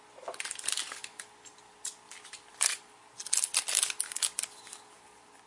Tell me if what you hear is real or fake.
real